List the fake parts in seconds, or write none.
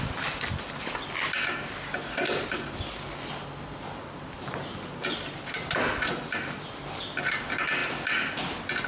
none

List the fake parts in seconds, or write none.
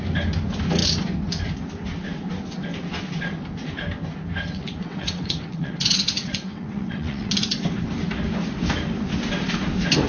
4.5-7.3 (vocoder, WaveNeXt)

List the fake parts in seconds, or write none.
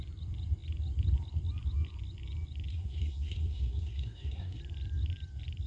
2.7-4.6 (codec, SNAC)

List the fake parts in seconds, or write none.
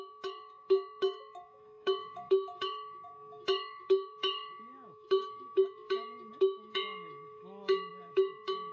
0.0-8.7 (autoencoder, DAC-VAE)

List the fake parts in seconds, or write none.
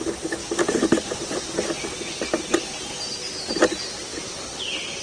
4.1-5.0 (vocoder, BigVGAN v2)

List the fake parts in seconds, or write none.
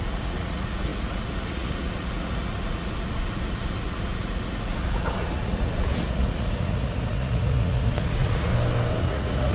0.0-8.5 (vocoder, Vocos); 9.0-9.5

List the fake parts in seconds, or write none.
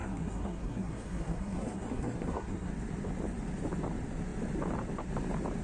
0.0-2.7 (codec, SNAC)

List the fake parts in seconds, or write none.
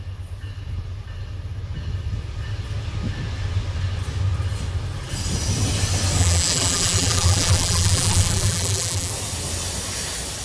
6.2-9.1 (vocoder, BigVGAN v2)